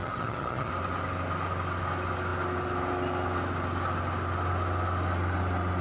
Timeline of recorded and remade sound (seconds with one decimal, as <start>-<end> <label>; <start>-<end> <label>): 0.0-0.7 remade; 0.7-5.8 recorded